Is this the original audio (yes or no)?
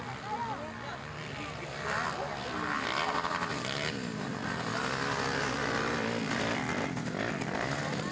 yes